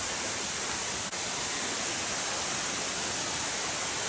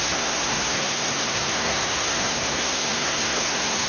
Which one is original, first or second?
first